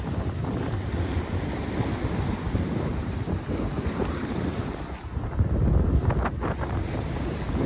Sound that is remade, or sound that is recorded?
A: recorded